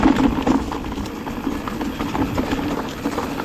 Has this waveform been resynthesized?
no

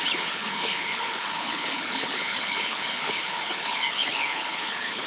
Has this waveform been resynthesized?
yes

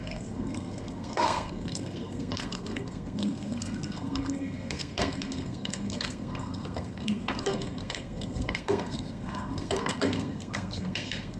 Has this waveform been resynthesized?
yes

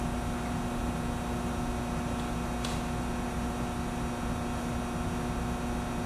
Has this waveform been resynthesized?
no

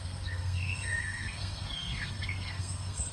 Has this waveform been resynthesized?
yes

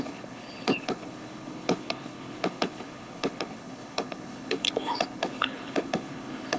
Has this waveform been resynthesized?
yes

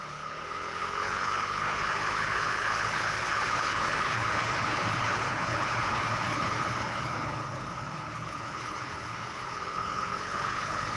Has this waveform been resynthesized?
yes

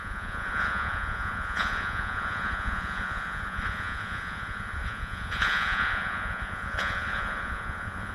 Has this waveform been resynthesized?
yes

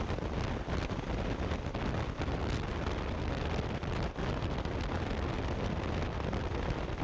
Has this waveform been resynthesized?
no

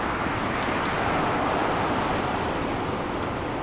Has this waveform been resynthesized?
no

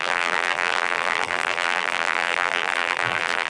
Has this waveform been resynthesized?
yes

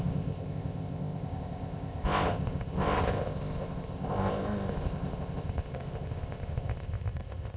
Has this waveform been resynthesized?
yes